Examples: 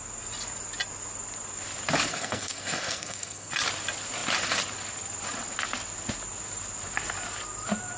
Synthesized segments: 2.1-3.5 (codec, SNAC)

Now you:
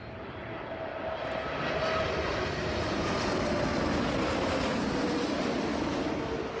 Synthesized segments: none

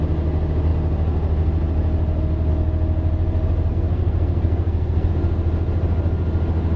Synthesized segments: 3.7-5.1 (codec, SNAC)

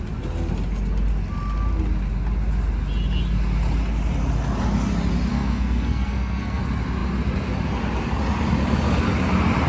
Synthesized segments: 5.3-6.6 (codec, SNAC)

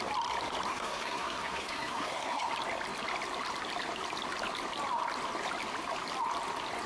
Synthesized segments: 0.7-2.5 (codec, SNAC)

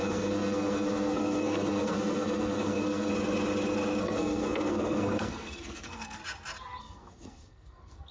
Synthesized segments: 0.0-3.1 (codec, SNAC); 4.0-6.2; 6.8-8.1

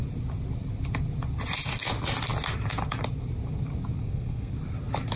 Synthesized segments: 4.0-4.5 (codec, SNAC)